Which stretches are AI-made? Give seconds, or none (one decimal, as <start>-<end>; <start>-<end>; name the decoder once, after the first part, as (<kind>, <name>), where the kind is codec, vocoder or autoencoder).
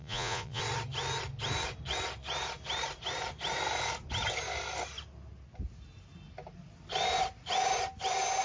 0.0-0.6 (vocoder, Vocos)